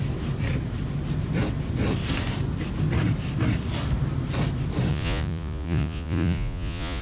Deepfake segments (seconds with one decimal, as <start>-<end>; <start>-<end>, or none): 4.9-7.0